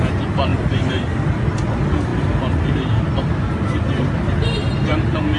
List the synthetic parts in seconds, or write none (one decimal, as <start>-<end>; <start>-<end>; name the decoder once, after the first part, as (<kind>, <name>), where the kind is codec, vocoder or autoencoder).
0.5-1.0 (vocoder, BigVGAN v2)